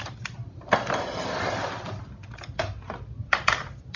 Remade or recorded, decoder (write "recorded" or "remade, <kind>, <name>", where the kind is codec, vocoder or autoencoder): recorded